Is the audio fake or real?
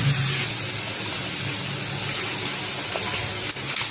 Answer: real